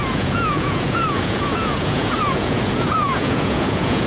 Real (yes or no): no